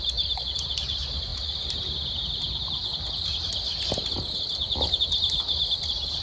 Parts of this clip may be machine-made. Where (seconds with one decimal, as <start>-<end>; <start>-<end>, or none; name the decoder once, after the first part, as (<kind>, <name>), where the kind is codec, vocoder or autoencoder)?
none